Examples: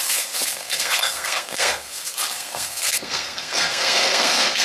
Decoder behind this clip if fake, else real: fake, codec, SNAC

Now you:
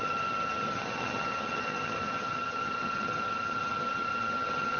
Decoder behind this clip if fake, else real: fake, vocoder, HiFi-GAN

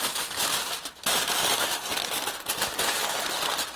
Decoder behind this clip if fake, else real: fake, vocoder, BigVGAN v2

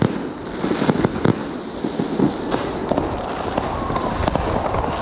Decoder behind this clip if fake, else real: real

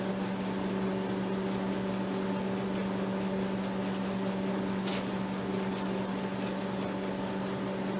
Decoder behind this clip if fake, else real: real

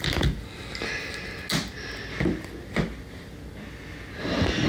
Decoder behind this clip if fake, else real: real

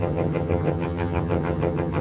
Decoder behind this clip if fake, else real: fake, vocoder, HiFi-GAN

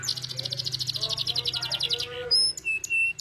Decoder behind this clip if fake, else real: real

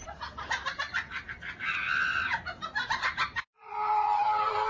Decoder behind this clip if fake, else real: real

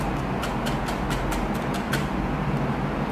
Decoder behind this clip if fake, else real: real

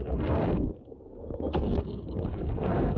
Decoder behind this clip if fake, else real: fake, codec, SNAC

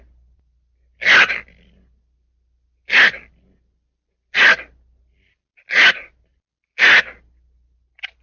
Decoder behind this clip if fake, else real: real